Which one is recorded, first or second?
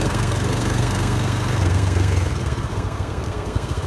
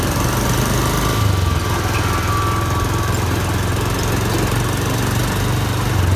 second